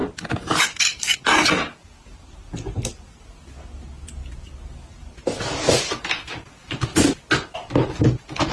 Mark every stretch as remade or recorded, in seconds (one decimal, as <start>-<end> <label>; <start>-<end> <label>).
0.0-8.5 recorded